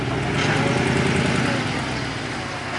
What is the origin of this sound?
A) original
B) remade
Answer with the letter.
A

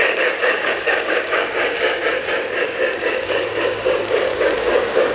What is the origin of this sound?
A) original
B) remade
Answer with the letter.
B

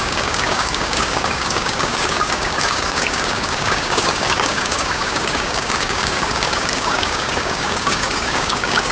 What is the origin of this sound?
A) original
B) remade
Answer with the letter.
B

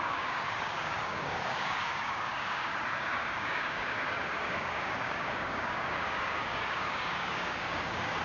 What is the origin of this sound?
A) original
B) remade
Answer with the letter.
B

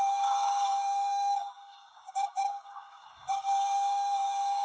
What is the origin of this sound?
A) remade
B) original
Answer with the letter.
A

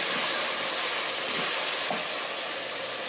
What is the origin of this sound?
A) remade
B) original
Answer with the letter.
B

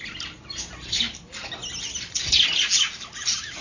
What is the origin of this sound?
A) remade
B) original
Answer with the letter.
B